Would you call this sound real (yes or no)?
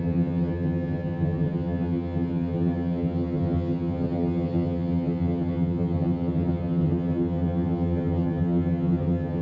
no